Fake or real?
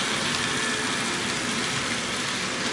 real